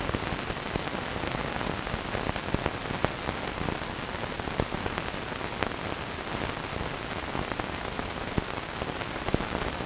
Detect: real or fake real